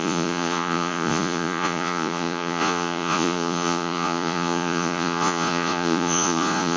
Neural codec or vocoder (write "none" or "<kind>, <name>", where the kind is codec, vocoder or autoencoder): vocoder, Vocos